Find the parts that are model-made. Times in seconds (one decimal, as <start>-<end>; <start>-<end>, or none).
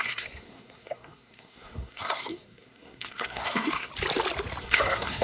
0.0-3.9; 4.6-5.2